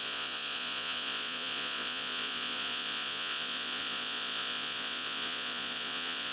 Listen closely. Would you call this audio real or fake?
fake